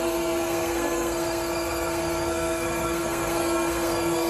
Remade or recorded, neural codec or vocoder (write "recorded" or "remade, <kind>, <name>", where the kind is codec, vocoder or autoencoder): remade, codec, SNAC